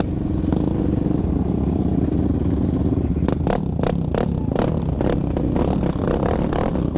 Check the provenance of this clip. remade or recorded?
recorded